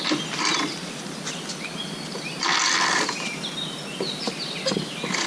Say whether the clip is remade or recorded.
recorded